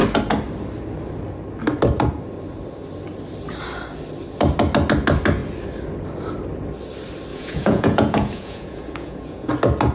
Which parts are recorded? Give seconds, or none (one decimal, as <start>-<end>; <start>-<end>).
0.0-7.3; 9.5-9.9